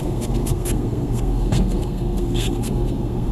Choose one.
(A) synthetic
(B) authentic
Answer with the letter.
A